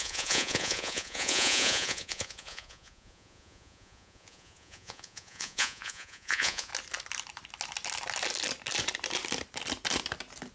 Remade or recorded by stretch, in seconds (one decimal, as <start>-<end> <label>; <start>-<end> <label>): 0.0-6.7 remade; 6.7-10.5 recorded